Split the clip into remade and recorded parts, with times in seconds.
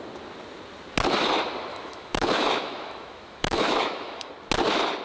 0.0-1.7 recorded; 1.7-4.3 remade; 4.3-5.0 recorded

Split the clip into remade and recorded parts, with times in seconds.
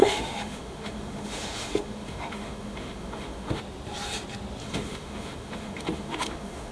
0.0-3.6 remade; 3.6-4.6 recorded; 4.6-6.7 remade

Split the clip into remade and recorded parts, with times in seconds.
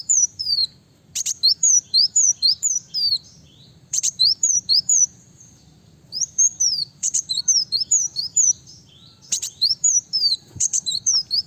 0.0-0.6 remade; 0.6-1.5 recorded; 1.5-11.5 remade